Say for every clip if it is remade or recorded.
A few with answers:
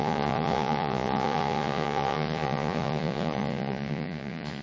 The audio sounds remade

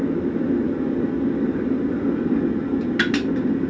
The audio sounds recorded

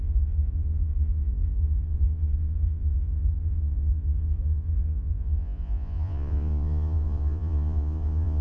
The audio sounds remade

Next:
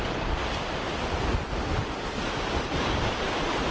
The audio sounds recorded